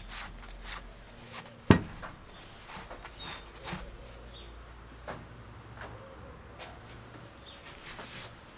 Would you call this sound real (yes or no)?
yes